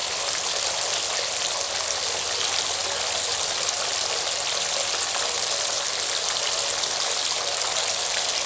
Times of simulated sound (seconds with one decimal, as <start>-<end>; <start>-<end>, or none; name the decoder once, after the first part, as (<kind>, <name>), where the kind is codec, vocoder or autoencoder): none